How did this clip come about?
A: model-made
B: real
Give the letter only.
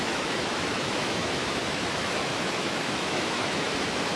A